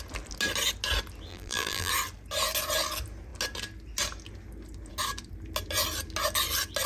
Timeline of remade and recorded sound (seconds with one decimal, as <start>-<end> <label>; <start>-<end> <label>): 0.0-1.3 recorded; 1.3-1.9 remade; 1.9-6.9 recorded